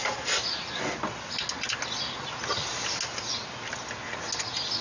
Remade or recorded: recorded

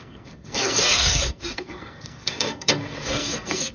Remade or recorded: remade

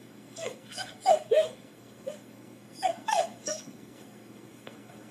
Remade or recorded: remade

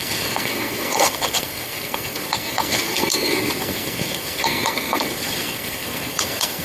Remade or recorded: remade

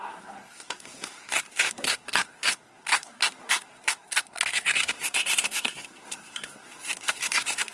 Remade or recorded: remade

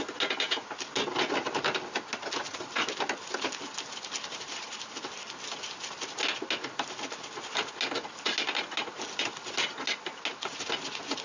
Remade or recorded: recorded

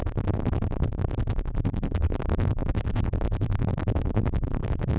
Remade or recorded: remade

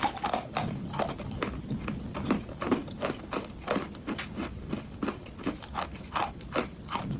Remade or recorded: recorded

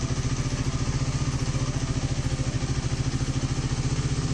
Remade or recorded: recorded